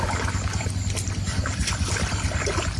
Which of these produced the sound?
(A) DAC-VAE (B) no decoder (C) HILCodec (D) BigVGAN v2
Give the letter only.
D